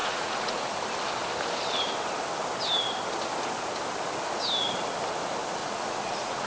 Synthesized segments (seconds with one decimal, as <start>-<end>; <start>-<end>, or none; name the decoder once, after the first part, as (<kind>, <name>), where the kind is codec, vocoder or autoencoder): 0.0-0.7 (vocoder, Vocos); 5.6-6.5